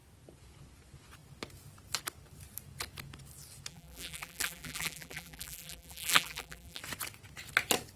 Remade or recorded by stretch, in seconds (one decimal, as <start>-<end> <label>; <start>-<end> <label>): 0.0-3.7 recorded; 3.7-6.8 remade; 6.8-8.0 recorded